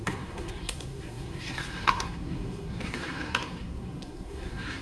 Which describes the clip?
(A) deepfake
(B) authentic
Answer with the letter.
A